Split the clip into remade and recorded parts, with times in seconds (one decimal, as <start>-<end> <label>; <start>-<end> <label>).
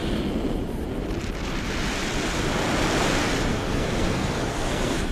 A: 0.0-3.5 recorded; 3.5-5.1 remade